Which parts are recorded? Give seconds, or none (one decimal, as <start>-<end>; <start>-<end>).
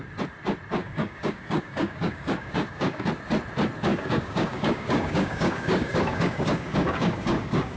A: 0.0-0.8; 3.1-3.9